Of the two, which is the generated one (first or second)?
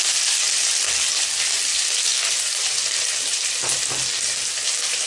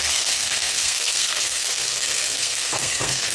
second